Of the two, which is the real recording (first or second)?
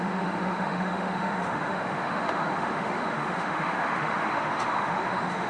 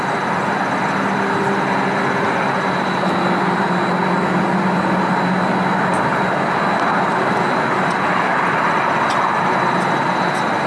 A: second